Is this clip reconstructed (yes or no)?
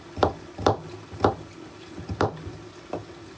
no